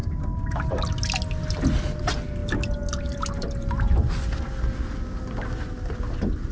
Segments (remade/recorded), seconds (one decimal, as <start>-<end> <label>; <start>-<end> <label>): 0.0-6.5 recorded